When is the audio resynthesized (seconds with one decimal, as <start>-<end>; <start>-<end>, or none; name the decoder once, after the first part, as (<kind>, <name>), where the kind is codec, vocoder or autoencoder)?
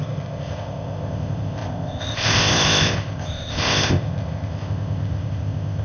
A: 0.0-5.8 (codec, ZipCodec)